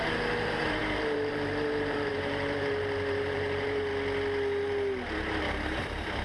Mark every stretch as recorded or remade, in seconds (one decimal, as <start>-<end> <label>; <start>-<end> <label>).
0.0-3.9 remade; 3.9-5.4 recorded; 5.4-6.2 remade